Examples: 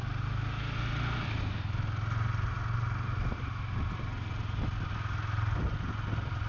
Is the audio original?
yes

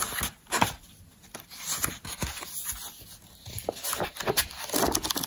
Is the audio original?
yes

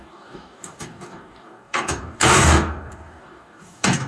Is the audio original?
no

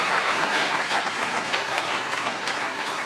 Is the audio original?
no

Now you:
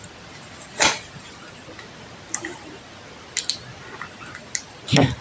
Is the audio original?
yes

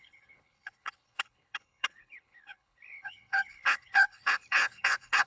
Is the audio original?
no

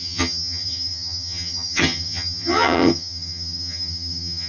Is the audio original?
no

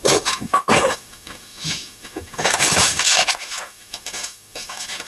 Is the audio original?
no